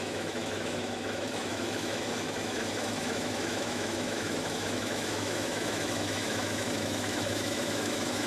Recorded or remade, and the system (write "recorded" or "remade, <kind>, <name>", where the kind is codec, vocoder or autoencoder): remade, autoencoder, DAC-VAE